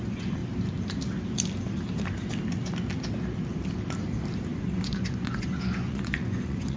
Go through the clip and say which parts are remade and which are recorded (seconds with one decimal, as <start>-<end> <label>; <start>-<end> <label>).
0.0-0.4 remade; 0.4-4.5 recorded; 4.5-6.8 remade